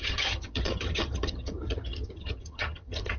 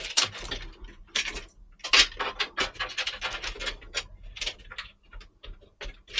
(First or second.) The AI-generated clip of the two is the first